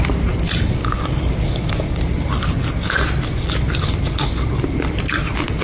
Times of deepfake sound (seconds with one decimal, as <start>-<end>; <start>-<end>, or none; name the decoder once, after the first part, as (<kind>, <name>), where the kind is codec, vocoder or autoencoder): 0.7-2.0 (codec, DAC)